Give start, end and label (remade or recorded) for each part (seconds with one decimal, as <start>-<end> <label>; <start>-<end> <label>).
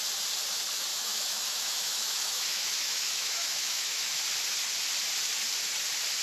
0.0-0.9 recorded; 0.9-4.2 remade; 4.2-6.2 recorded